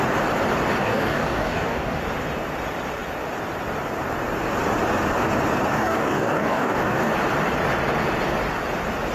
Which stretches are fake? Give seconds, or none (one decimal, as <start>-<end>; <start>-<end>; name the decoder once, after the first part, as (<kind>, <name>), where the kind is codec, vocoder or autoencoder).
0.8-2.0 (codec, DAC); 5.7-7.1